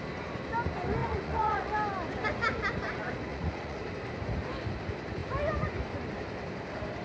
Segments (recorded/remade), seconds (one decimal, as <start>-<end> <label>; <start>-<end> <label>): 0.0-1.0 recorded; 1.0-1.7 remade; 1.7-3.3 recorded; 3.3-3.8 remade; 3.8-7.0 recorded